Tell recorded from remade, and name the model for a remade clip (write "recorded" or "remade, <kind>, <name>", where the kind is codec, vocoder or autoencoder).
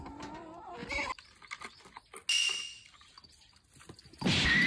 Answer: recorded